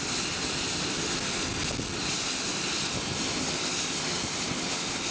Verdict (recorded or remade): recorded